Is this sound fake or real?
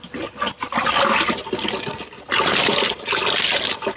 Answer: real